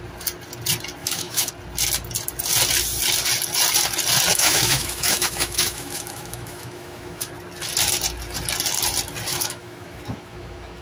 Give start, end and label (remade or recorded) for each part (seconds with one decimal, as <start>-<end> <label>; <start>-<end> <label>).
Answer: 0.0-1.0 recorded; 1.0-1.5 remade; 1.5-4.3 recorded; 4.3-7.3 remade; 7.3-9.3 recorded; 9.3-10.8 remade